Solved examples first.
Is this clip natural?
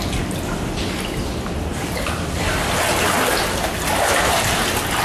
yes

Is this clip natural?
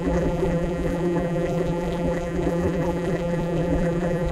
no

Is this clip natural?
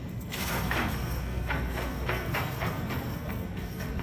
no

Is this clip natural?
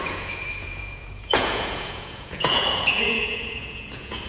no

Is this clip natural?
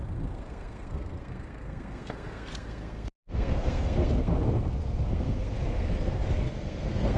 no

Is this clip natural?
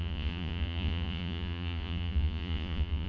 no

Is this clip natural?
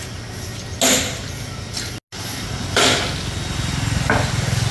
yes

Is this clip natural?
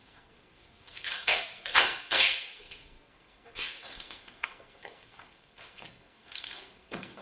no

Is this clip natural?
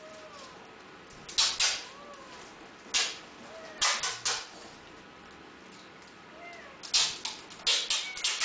yes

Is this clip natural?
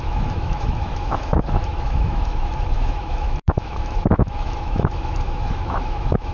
no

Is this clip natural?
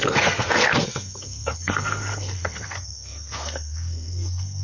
no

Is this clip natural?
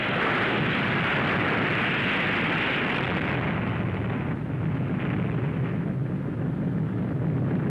yes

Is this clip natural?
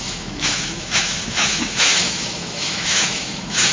no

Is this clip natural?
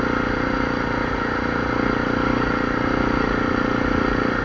yes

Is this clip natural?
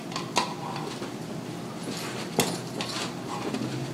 yes